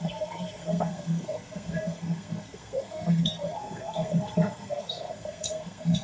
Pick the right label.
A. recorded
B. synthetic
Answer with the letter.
B